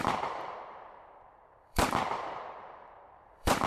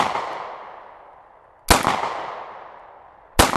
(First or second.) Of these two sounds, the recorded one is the second